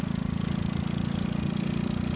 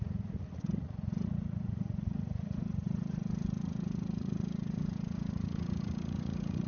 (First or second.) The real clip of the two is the first